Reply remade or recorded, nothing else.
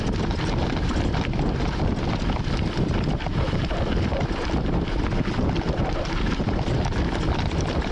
remade